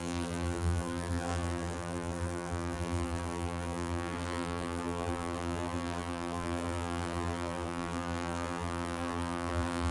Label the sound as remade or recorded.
remade